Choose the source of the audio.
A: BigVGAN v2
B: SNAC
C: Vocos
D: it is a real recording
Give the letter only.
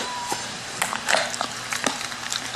D